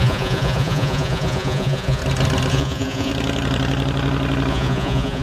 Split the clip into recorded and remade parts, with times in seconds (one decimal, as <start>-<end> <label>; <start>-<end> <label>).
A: 0.0-2.0 remade; 2.0-2.5 recorded; 2.5-3.1 remade; 3.1-4.5 recorded; 4.5-5.2 remade